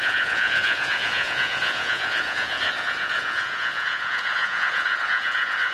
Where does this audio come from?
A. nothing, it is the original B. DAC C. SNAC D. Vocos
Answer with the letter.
D